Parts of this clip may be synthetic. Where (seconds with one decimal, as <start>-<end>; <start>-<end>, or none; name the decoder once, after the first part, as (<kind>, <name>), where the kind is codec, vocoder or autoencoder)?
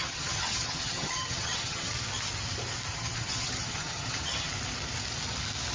0.0-1.9 (vocoder, HiFi-GAN); 2.9-4.5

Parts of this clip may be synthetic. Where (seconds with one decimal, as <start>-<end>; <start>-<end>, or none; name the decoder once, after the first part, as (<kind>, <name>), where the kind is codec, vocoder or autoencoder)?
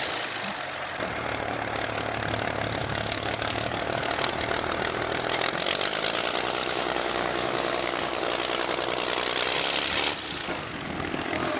2.8-4.3 (codec, DAC); 6.6-8.3; 10.4-11.6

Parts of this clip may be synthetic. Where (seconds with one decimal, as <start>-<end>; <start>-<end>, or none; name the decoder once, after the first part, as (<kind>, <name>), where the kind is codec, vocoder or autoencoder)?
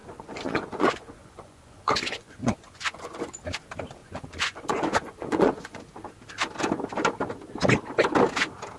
0.0-3.3 (vocoder, Vocos); 4.0-5.8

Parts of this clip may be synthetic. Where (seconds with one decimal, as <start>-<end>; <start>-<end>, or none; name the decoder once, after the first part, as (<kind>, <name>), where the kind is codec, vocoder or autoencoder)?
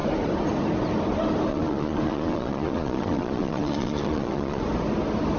1.5-4.6 (vocoder, Vocos)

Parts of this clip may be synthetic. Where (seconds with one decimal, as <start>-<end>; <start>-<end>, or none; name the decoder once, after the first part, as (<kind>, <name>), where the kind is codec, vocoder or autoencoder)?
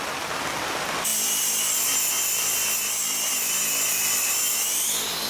none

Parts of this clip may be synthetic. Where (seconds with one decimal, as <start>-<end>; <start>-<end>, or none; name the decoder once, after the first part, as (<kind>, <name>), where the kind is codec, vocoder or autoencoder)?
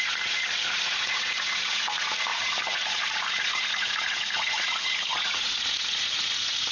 0.0-6.7 (vocoder, Vocos)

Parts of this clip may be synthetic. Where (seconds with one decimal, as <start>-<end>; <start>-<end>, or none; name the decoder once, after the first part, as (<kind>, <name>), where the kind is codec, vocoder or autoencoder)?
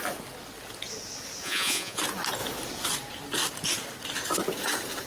1.4-2.0 (vocoder, Vocos)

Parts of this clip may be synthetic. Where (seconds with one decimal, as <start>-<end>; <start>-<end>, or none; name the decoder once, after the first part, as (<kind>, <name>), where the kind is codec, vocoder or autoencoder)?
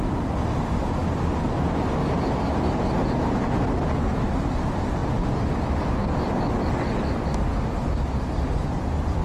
none